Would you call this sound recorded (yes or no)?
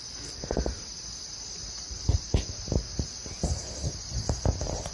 yes